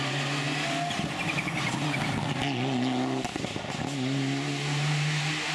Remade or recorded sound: recorded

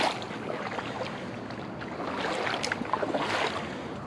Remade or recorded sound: recorded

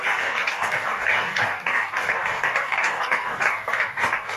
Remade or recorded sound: remade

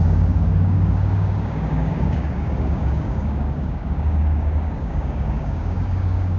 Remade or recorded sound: remade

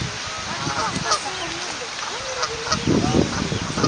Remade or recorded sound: recorded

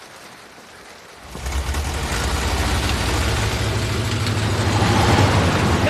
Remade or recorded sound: recorded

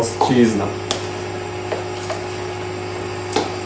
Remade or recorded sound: recorded